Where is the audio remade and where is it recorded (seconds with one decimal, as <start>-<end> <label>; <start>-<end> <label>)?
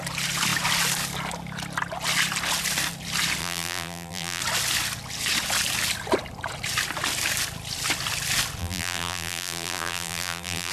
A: 0.0-3.4 recorded; 3.4-4.4 remade; 4.4-8.6 recorded; 8.6-10.7 remade